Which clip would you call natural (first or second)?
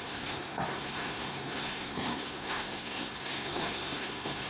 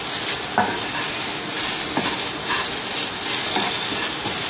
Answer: second